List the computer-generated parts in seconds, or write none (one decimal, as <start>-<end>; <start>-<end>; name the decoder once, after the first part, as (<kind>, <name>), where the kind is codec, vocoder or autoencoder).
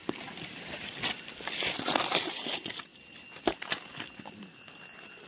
none